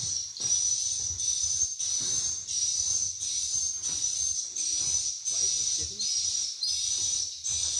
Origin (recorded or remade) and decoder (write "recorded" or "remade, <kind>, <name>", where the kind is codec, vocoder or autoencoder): remade, vocoder, BigVGAN v2